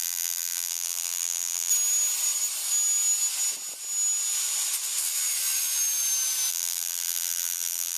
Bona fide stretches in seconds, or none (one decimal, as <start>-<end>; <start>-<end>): 1.7-6.5

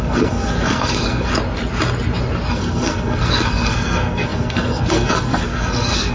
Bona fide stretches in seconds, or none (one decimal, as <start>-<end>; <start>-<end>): 1.3-2.5

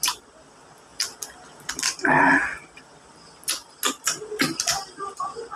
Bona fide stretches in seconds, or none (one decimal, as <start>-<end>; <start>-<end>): 0.0-5.6

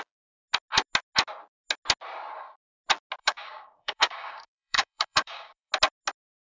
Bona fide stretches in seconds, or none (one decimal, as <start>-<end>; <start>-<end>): 0.0-3.2; 5.7-6.5

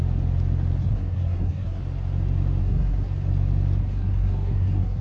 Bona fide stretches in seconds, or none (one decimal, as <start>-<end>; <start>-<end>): 0.0-0.8; 1.8-2.6; 3.1-3.8

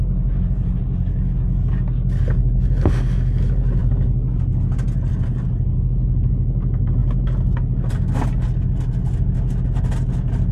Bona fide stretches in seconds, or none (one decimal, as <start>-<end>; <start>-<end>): 0.0-10.5

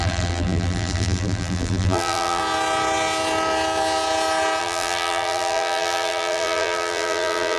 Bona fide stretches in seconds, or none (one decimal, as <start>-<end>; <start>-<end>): 2.4-4.6